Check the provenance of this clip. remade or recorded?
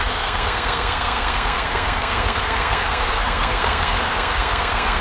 remade